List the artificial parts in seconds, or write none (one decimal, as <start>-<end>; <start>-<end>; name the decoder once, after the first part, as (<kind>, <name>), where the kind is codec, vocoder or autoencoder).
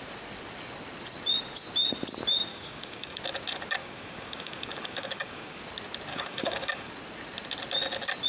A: 2.5-3.2 (codec, DAC); 3.8-5.6; 6.1-6.9